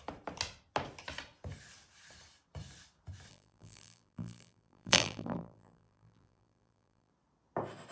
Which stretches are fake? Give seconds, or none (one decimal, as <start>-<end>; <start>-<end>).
3.3-7.1